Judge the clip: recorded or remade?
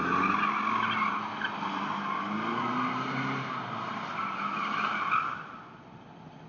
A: recorded